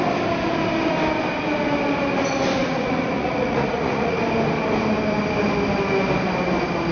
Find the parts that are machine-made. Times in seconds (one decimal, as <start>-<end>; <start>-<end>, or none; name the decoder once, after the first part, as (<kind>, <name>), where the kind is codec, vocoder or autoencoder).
2.6-4.2 (vocoder, Vocos)

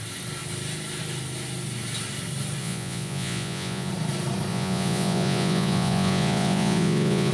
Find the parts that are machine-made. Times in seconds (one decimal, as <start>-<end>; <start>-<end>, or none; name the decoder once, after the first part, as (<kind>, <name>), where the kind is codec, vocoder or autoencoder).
2.6-3.9 (vocoder, Vocos); 4.5-7.3

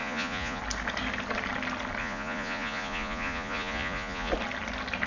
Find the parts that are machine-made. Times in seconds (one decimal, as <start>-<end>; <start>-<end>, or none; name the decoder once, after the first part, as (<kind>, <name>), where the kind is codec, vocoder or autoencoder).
0.0-0.6 (vocoder, Vocos); 2.0-4.3

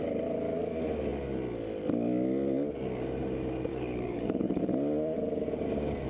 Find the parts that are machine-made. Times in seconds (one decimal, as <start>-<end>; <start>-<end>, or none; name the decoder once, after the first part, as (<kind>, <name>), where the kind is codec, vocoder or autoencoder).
3.7-4.6 (codec, DAC)